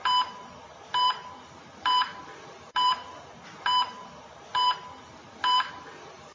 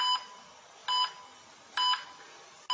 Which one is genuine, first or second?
second